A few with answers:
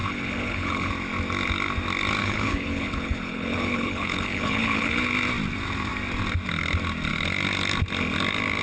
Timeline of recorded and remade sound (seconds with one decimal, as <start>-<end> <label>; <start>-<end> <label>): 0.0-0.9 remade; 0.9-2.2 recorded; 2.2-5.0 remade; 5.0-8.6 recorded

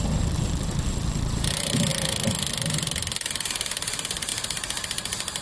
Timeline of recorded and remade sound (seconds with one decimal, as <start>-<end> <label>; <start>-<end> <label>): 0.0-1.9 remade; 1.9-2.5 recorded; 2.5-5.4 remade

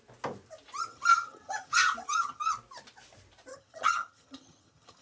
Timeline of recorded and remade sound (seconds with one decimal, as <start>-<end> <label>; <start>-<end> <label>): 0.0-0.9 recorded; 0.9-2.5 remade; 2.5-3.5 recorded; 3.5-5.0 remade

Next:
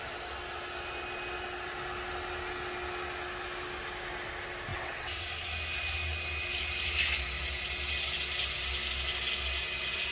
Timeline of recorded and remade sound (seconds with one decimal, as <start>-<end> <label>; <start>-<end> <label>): 0.0-4.7 recorded; 4.7-5.3 remade; 5.3-10.1 recorded

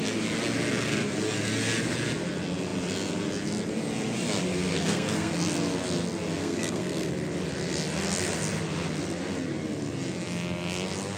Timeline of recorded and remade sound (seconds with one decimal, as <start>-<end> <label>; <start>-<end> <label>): 0.0-4.5 recorded; 4.5-5.3 remade; 5.3-6.4 recorded; 6.4-7.1 remade; 7.1-11.2 recorded